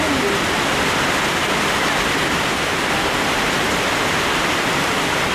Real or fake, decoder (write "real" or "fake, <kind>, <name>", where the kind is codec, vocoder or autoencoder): real